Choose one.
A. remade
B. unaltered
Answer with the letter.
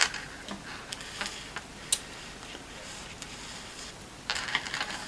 B